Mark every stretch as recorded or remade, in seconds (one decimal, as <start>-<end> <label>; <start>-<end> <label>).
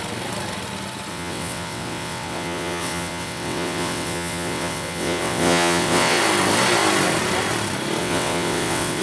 0.0-1.1 recorded; 1.1-6.2 remade; 6.2-8.0 recorded; 8.0-9.0 remade